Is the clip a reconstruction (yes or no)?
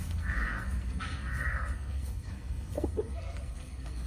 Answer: yes